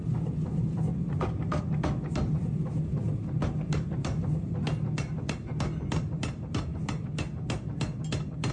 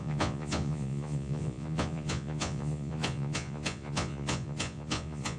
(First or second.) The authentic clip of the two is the first